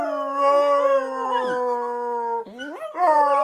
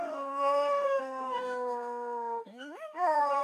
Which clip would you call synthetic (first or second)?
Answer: second